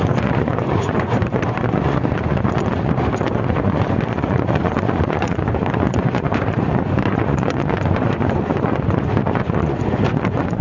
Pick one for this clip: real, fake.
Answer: fake